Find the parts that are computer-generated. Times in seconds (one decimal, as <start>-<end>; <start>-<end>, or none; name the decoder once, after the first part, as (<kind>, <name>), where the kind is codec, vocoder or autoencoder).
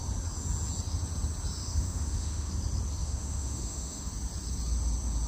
1.6-2.5 (autoencoder, DAC-VAE); 3.0-4.1